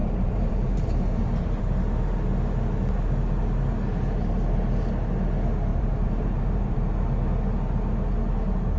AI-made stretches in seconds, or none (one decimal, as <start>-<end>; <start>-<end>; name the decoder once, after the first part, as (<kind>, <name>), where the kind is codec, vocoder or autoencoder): 0.0-1.6 (vocoder, BigVGAN v2); 5.7-6.9